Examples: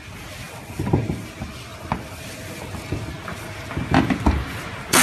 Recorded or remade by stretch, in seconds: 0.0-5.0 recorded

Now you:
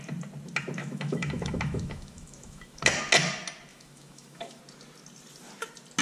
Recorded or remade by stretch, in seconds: 0.0-0.8 recorded; 0.8-2.8 remade; 2.8-3.7 recorded; 3.7-4.6 remade; 4.6-6.0 recorded

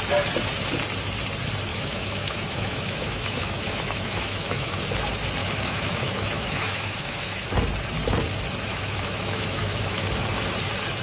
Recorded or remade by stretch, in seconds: 0.0-1.7 recorded; 1.7-4.8 remade; 4.8-5.4 recorded; 5.4-7.5 remade; 7.5-8.7 recorded; 8.7-10.1 remade; 10.1-11.0 recorded

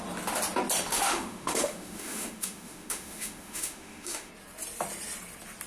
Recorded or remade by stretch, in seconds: 0.0-0.9 recorded; 0.9-4.3 remade; 4.3-5.7 recorded

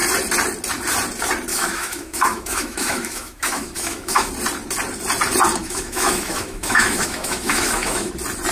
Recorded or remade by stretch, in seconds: 0.0-1.5 recorded; 1.5-4.3 remade; 4.3-5.6 recorded; 5.6-8.1 remade; 8.1-8.5 recorded

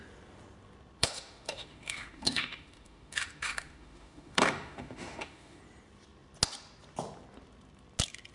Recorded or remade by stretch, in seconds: 0.0-1.0 recorded; 1.0-5.6 remade; 5.6-8.3 recorded